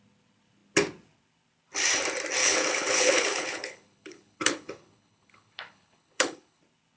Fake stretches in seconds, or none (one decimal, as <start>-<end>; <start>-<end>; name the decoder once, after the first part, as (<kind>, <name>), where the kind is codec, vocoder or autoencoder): 2.4-6.6 (codec, HILCodec)